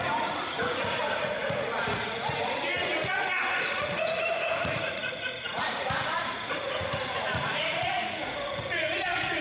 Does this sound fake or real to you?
fake